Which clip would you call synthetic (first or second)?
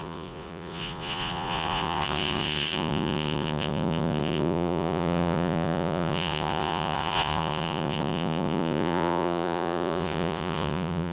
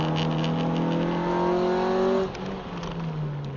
first